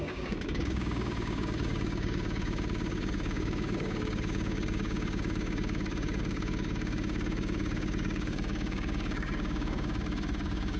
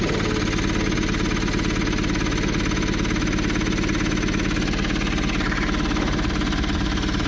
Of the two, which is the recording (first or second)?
second